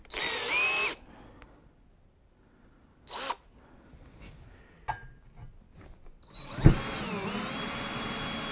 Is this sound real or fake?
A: real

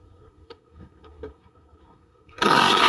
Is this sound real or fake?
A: fake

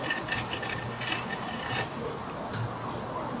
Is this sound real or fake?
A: real